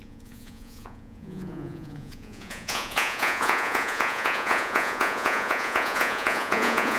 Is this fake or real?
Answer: fake